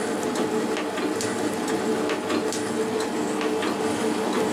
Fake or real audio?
real